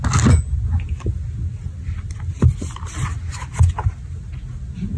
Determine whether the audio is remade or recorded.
recorded